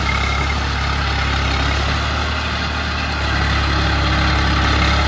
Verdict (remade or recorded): recorded